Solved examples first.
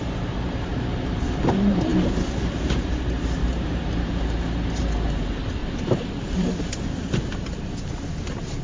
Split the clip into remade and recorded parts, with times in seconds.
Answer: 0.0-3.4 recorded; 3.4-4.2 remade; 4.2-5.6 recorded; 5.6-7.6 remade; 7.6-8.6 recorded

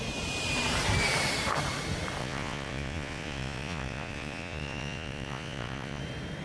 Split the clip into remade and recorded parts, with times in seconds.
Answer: 0.0-2.2 recorded; 2.2-6.0 remade; 6.0-6.4 recorded

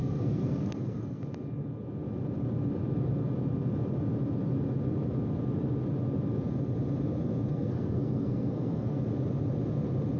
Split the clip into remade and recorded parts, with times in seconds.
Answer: 0.0-1.2 remade; 1.2-7.5 recorded; 7.5-9.0 remade; 9.0-10.2 recorded

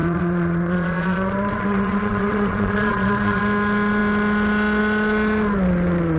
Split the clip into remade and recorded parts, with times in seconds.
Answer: 0.0-3.4 remade; 3.4-6.2 recorded

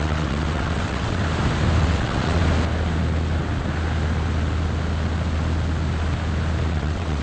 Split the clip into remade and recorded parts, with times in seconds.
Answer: 0.0-1.2 remade; 1.2-1.8 recorded; 1.8-2.4 remade; 2.4-6.7 recorded; 6.7-7.2 remade

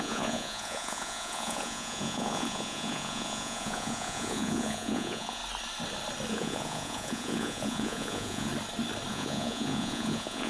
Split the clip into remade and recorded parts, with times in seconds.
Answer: 0.0-5.4 remade; 5.4-6.3 recorded; 6.3-8.5 remade; 8.5-9.1 recorded; 9.1-10.5 remade

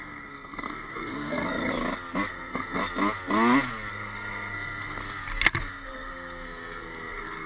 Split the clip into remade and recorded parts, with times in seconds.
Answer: 0.0-1.7 remade; 1.7-2.3 recorded; 2.3-2.8 remade; 2.8-3.9 recorded; 3.9-5.0 remade; 5.0-5.6 recorded; 5.6-7.5 remade

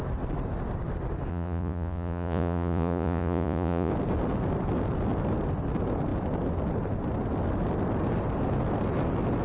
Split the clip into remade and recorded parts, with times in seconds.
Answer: 0.0-1.3 recorded; 1.3-3.9 remade; 3.9-9.4 recorded